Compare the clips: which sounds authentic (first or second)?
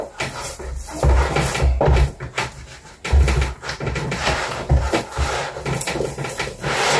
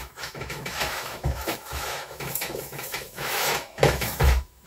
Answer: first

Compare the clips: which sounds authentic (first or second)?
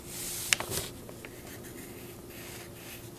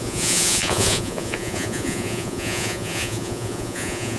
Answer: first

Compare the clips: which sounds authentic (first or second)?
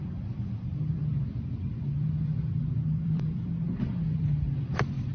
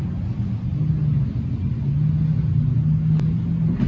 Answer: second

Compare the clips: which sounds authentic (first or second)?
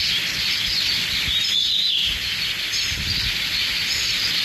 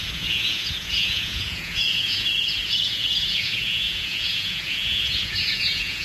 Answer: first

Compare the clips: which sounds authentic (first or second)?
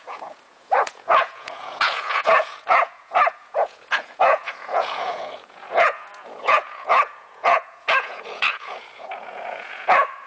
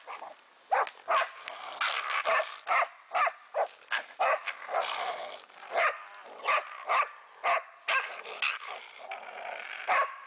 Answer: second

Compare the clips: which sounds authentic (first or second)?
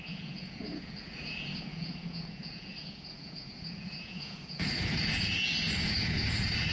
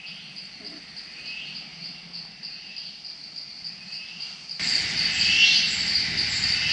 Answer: second